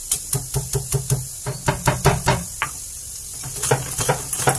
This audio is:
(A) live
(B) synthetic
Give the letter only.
A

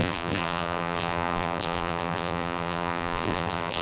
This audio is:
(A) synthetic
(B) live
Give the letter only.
A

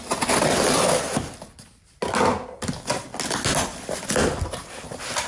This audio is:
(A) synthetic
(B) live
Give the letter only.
B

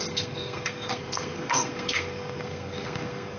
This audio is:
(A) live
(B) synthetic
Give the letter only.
B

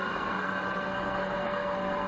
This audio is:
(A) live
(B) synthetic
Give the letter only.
B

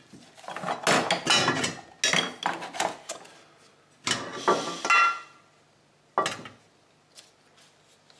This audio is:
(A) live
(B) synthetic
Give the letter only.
A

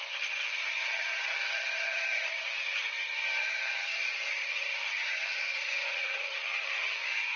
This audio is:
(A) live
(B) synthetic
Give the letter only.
B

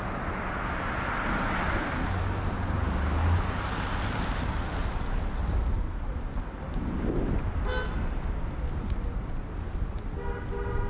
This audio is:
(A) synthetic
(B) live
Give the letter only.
B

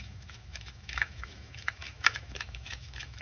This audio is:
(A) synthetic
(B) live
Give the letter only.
A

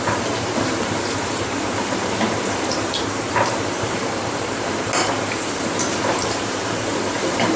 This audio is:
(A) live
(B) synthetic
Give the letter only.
B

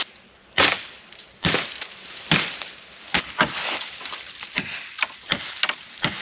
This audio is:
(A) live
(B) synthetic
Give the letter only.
B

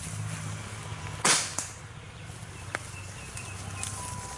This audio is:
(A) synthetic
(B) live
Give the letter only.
B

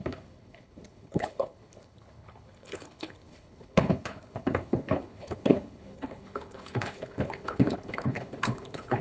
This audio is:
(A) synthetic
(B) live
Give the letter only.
A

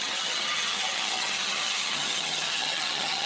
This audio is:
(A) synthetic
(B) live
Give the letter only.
A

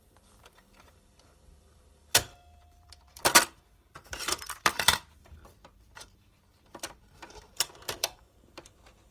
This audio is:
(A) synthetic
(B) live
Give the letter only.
A